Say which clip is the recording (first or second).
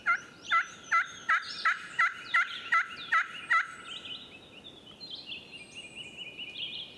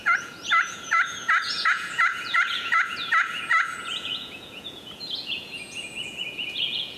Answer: first